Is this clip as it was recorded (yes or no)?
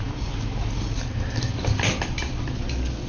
yes